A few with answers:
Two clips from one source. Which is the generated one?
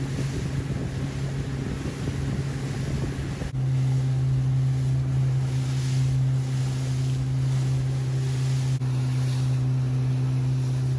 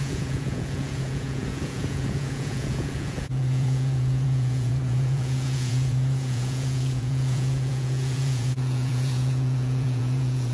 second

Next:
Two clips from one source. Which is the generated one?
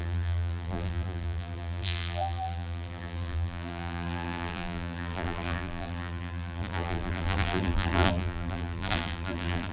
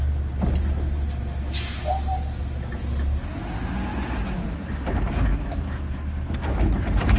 first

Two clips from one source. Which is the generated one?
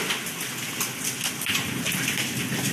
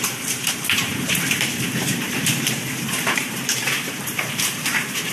second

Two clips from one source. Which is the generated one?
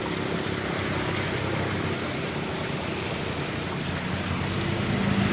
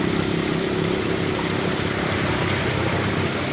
second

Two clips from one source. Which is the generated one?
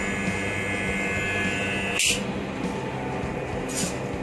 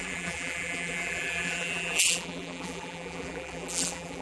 second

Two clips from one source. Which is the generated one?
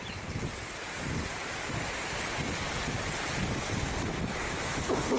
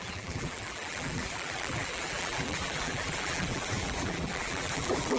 second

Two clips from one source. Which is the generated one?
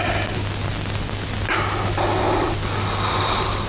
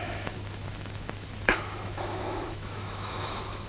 second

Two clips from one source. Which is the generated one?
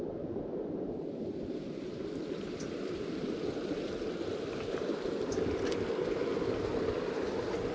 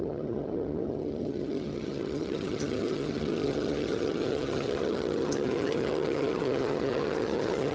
second